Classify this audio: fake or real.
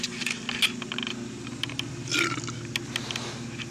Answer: real